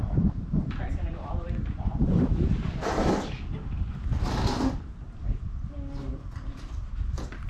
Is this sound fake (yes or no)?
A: no